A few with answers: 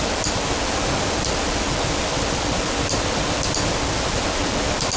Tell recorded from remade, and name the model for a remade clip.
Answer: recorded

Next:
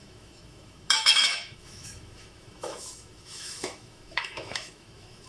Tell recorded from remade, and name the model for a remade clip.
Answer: remade, autoencoder, DAC-VAE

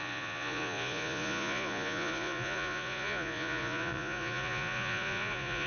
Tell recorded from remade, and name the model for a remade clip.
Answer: remade, vocoder, Vocos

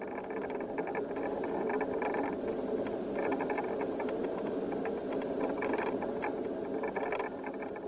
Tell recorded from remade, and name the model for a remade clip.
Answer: recorded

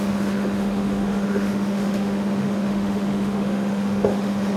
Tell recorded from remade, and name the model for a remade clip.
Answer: remade, autoencoder, DAC-VAE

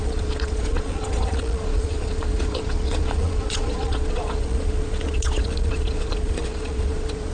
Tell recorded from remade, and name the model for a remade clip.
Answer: remade, vocoder, Vocos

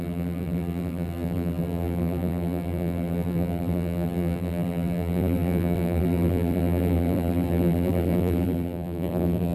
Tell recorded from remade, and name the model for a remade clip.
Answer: remade, vocoder, BigVGAN v2